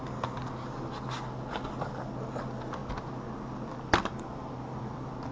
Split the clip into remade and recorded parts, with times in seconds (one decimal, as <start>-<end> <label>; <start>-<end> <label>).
0.0-5.3 recorded